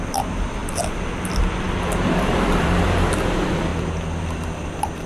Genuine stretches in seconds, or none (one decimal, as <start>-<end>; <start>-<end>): 3.7-4.2